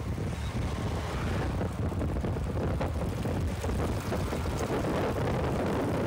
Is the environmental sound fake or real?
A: real